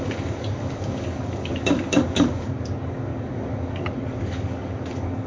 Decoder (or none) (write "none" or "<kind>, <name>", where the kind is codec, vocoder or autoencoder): codec, DAC